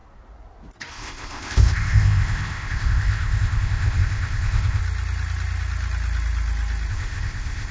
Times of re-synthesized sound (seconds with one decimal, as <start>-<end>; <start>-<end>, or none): 0.9-4.8; 6.9-7.7